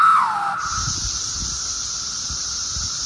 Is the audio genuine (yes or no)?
yes